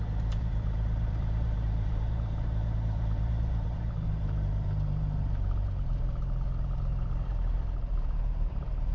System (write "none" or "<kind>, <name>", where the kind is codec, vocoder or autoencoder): vocoder, BigVGAN v2